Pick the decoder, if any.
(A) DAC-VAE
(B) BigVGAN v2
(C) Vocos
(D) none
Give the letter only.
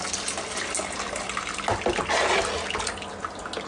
D